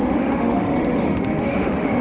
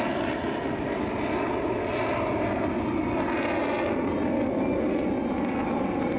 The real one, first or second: second